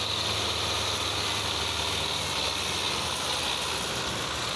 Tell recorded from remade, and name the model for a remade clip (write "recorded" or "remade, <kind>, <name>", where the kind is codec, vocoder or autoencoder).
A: recorded